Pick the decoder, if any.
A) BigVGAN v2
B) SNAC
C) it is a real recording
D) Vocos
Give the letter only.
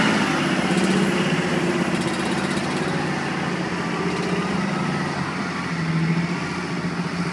C